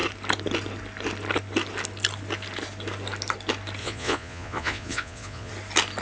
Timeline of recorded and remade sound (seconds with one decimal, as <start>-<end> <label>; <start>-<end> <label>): 0.0-3.8 recorded; 3.8-5.5 remade; 5.5-6.0 recorded